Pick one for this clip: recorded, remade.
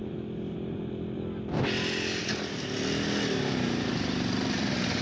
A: recorded